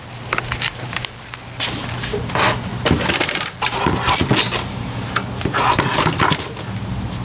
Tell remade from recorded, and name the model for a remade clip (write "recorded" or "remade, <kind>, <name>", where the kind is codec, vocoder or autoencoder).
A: recorded